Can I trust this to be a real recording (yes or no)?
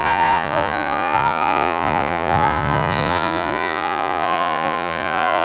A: no